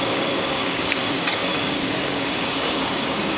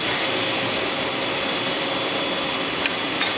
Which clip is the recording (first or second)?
second